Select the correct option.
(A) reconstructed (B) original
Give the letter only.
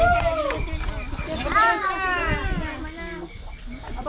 B